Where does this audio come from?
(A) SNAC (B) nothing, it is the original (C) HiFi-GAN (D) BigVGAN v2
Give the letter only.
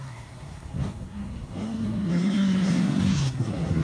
A